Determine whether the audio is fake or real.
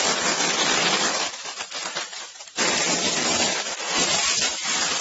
real